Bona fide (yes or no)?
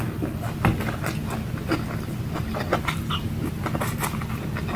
yes